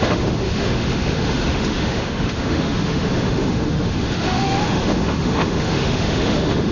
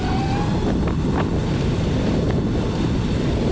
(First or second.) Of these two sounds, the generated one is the first